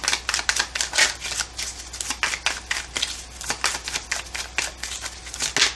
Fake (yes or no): no